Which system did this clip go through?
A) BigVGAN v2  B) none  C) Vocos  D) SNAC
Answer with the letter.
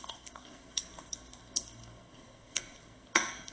D